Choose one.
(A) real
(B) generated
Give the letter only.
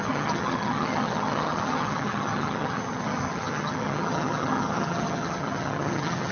B